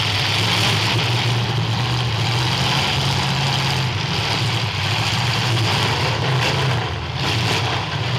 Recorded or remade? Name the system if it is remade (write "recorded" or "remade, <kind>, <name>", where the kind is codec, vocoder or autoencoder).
recorded